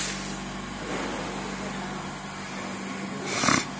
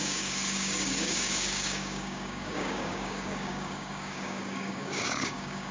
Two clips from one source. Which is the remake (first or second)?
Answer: second